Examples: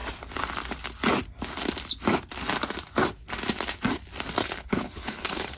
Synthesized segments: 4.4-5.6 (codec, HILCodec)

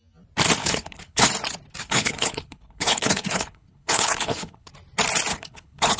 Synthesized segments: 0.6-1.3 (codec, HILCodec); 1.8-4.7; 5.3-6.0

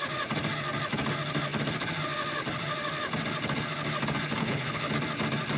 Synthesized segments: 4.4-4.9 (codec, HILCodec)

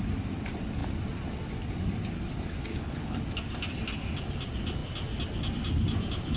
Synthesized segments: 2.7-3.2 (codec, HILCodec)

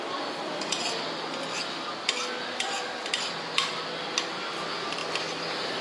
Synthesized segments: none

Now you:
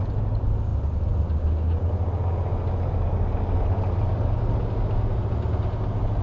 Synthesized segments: none

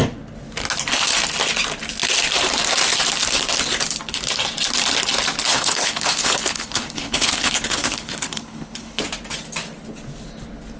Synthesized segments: 5.5-9.0 (codec, HILCodec)

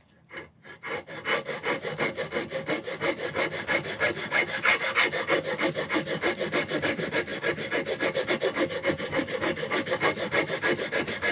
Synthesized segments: none